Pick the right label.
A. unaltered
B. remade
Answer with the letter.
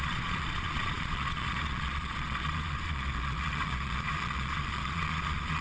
B